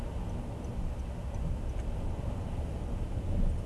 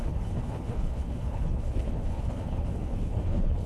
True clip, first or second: first